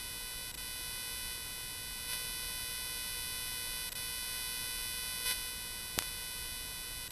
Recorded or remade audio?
recorded